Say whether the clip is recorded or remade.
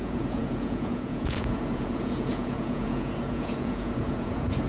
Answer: remade